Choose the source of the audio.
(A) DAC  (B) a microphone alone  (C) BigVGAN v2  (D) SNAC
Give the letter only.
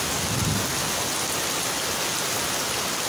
B